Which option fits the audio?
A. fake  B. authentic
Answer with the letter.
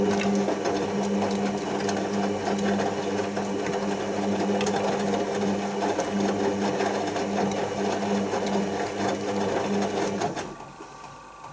B